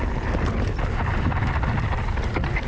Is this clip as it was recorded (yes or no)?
yes